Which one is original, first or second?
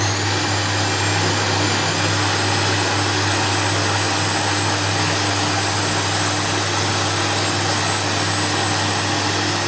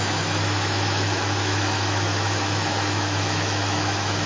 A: first